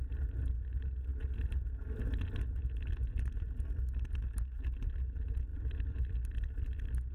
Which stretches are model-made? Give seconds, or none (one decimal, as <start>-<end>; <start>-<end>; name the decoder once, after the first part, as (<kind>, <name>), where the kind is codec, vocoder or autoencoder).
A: none